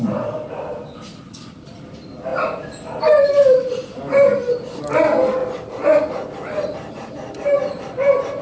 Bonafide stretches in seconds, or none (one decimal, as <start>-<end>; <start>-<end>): 2.3-3.2